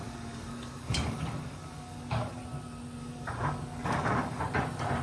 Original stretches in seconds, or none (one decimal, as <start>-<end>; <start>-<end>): 2.4-3.0; 4.4-5.0